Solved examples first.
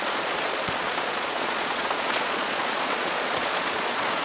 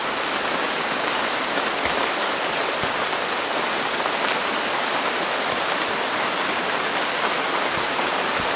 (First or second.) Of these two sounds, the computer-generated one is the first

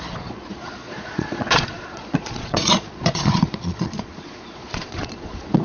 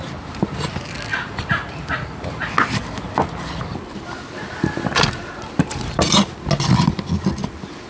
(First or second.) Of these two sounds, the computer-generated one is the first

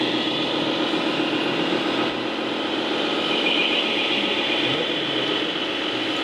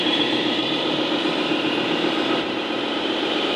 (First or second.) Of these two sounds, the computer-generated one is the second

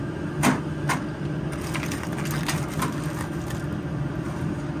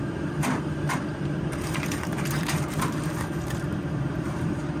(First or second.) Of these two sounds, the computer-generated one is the second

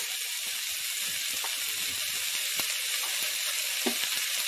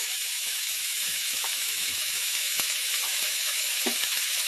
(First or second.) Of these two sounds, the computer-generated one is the second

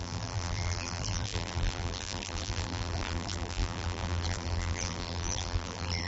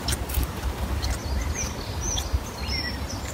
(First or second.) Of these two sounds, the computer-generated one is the first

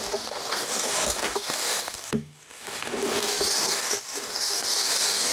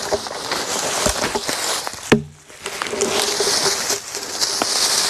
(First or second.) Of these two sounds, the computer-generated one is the first